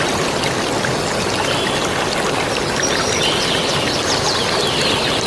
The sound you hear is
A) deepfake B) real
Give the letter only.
B